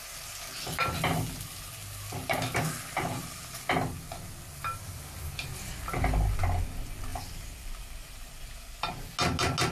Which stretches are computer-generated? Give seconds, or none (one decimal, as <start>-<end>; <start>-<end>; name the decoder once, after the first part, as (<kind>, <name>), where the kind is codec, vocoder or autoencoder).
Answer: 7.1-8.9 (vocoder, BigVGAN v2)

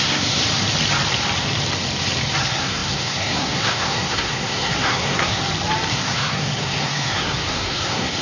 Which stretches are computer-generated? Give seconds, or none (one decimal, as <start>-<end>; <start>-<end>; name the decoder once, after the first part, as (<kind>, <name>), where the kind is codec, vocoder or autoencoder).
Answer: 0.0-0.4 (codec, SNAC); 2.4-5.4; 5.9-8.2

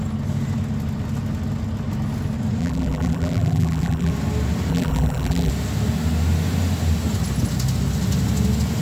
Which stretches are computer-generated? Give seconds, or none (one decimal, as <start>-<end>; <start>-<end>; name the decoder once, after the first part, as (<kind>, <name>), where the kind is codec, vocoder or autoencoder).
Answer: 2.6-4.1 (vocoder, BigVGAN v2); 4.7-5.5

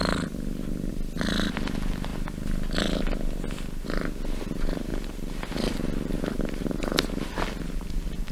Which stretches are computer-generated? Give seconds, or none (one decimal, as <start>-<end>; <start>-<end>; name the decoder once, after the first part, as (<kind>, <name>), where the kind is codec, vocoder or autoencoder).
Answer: 0.0-0.9 (vocoder, BigVGAN v2); 4.9-6.2

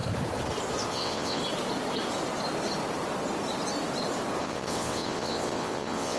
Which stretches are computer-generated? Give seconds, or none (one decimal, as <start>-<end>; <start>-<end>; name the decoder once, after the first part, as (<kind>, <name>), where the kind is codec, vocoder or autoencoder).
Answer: 0.9-1.4 (vocoder, WaveNeXt); 4.4-6.2

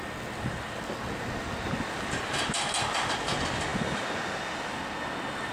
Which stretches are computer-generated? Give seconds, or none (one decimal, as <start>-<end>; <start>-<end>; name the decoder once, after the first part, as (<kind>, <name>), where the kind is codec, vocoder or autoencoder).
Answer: none